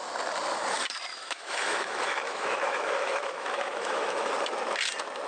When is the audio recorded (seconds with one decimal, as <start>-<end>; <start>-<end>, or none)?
0.0-1.1; 4.3-5.3